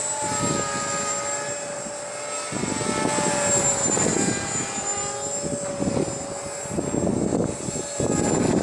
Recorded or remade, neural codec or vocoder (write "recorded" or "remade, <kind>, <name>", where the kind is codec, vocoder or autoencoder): recorded